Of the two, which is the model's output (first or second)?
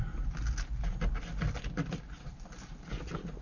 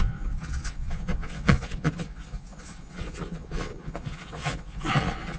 second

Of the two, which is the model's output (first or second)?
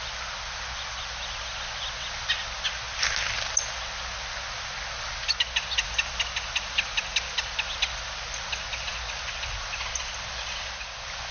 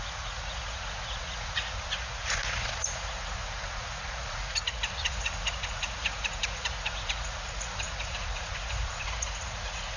second